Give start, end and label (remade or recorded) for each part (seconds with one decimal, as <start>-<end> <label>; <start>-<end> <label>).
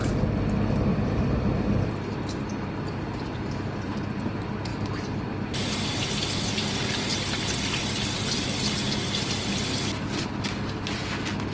0.0-0.9 recorded; 0.9-3.7 remade; 3.7-4.7 recorded; 4.7-5.2 remade; 5.2-11.5 recorded